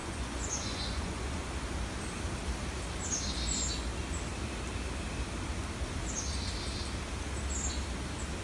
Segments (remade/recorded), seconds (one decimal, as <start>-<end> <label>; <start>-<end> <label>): 0.0-1.5 remade; 1.5-8.4 recorded